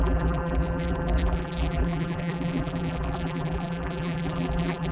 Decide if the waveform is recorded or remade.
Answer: remade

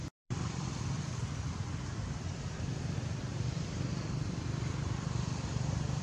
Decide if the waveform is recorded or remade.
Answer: remade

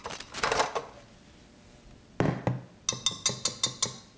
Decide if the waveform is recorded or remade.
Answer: recorded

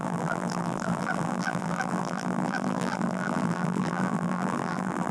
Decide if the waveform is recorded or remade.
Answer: remade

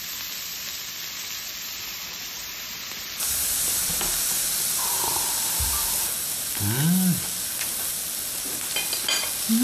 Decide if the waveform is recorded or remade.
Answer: recorded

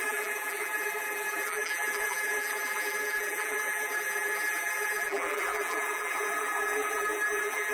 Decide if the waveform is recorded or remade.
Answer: remade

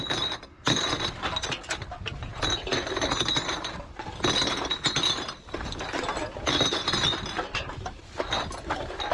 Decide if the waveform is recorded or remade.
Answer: recorded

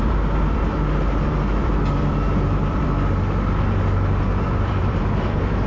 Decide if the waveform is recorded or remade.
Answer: remade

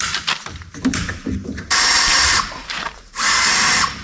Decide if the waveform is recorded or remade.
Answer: remade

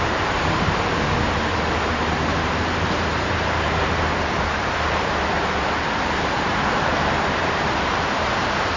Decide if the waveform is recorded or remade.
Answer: remade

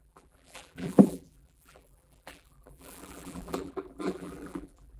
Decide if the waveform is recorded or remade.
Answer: remade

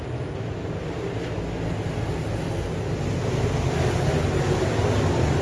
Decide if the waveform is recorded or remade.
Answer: recorded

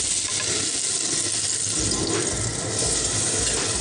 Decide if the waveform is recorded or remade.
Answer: recorded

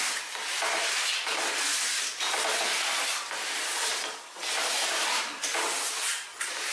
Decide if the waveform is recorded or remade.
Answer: remade